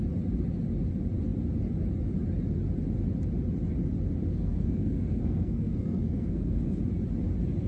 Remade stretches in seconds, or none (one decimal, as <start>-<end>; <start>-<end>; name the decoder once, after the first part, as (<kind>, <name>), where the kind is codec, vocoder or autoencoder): 4.3-6.8 (codec, SNAC)